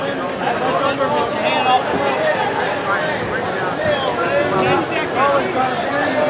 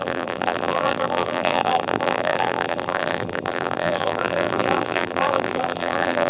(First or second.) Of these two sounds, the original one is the first